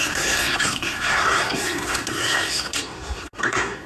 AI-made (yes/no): yes